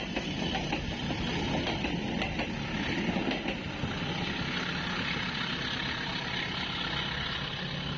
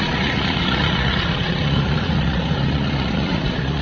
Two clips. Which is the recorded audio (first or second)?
first